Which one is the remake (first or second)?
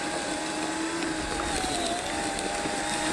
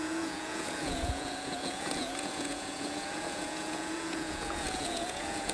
second